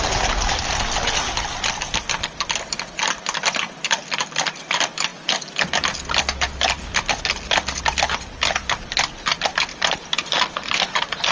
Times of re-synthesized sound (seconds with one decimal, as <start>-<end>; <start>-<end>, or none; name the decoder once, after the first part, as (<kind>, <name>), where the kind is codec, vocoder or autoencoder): none